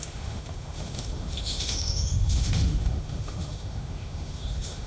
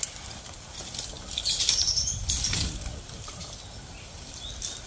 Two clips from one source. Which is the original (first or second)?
second